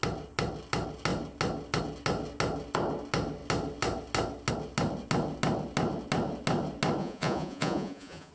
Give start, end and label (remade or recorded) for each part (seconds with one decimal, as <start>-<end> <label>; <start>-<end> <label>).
0.0-7.0 recorded; 7.0-8.3 remade